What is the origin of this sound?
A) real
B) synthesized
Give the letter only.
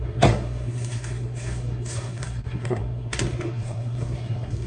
B